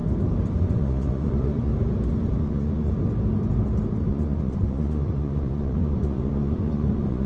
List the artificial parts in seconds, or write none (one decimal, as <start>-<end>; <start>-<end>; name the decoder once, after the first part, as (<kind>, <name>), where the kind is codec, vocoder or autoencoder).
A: 0.6-1.7 (vocoder, Vocos); 2.4-2.9; 4.1-7.3